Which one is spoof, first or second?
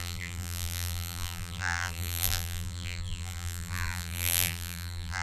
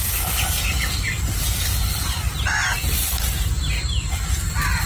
first